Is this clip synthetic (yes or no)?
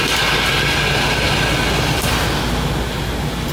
no